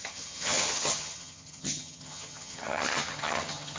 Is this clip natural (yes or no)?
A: no